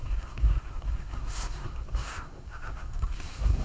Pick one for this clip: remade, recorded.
remade